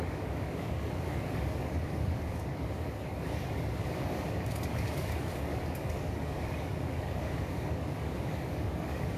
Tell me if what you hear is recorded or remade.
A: remade